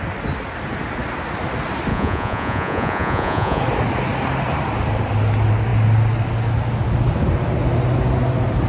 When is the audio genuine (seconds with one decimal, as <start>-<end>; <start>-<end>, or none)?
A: 0.0-1.9; 3.6-8.7

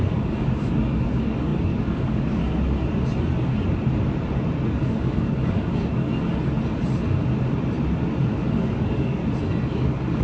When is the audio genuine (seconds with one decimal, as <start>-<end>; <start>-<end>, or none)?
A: 2.4-4.7; 6.1-8.3; 9.2-9.7

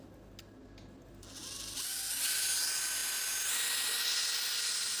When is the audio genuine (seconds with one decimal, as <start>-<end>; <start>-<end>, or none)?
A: 0.0-1.4; 2.1-5.0

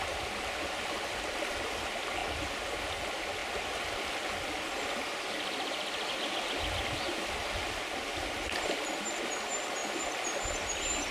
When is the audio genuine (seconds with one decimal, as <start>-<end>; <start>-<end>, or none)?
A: 0.0-11.1

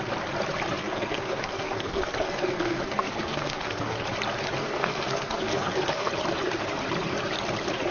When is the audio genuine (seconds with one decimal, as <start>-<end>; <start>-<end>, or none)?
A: 0.0-0.8; 4.0-4.6; 6.1-7.9